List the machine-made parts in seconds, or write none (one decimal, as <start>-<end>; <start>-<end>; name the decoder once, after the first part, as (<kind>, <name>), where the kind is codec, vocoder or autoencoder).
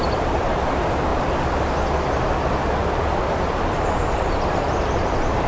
0.0-1.1 (vocoder, BigVGAN v2); 3.0-5.5